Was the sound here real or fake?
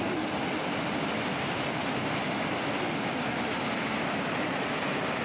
real